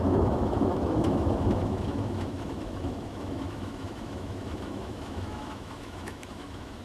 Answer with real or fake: fake